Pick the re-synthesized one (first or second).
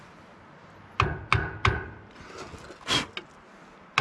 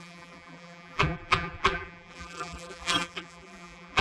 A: second